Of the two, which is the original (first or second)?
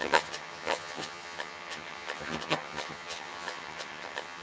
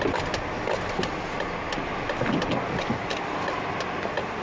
second